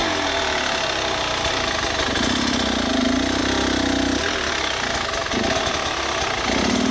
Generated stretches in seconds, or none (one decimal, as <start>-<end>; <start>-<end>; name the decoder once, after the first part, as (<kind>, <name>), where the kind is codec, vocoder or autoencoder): none